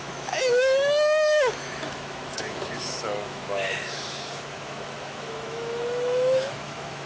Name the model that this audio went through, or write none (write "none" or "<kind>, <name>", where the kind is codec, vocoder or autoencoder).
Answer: autoencoder, DAC-VAE